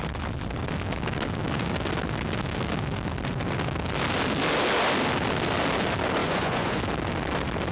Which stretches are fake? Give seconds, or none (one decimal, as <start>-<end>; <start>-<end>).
6.2-6.8